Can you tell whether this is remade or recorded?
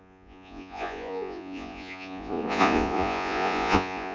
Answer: remade